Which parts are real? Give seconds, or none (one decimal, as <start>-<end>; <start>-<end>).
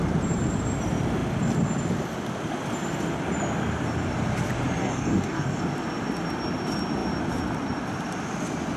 0.0-4.8; 5.6-8.8